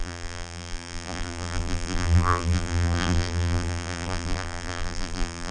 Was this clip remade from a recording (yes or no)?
yes